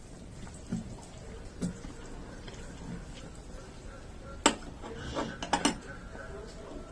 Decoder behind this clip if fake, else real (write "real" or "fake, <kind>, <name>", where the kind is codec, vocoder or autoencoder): real